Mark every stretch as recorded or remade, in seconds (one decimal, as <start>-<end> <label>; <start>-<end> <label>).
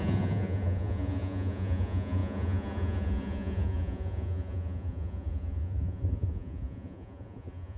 0.0-7.8 remade